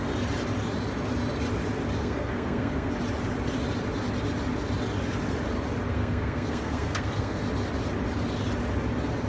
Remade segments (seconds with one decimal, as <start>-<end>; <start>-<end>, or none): 2.0-2.9; 5.9-7.4